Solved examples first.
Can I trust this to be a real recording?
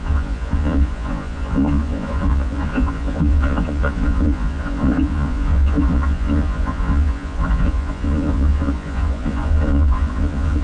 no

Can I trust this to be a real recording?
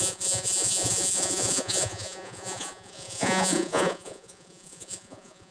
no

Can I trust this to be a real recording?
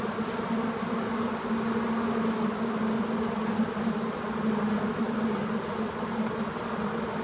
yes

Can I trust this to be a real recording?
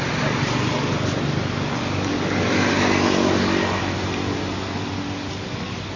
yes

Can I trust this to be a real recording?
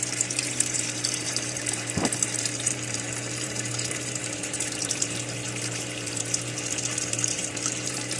no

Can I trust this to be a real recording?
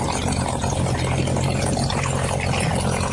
yes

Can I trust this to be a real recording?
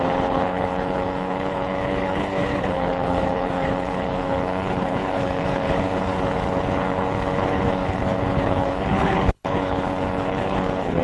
no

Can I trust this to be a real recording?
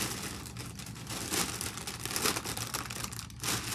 yes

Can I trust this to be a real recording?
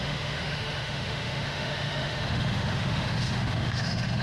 no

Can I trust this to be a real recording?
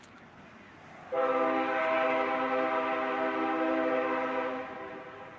yes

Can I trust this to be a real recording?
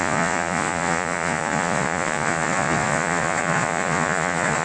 no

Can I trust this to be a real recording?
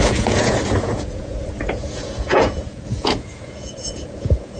no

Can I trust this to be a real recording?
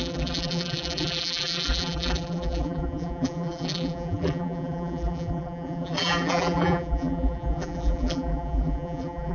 no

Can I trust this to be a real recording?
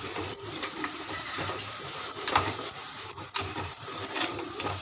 no